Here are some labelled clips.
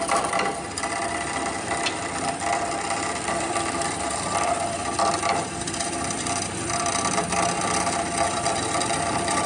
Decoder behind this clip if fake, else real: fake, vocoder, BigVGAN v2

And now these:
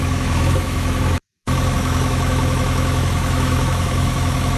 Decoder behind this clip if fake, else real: fake, autoencoder, DAC-VAE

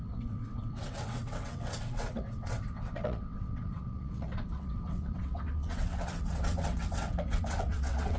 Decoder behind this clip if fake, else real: fake, vocoder, WaveNeXt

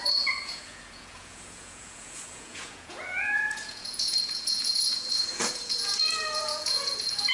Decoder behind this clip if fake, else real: fake, vocoder, Vocos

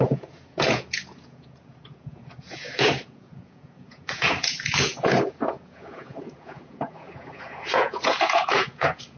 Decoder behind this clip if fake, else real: fake, vocoder, Vocos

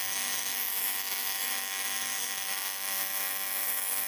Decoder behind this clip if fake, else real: fake, autoencoder, DAC-VAE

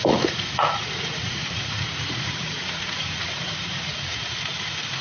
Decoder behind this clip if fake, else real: fake, vocoder, Vocos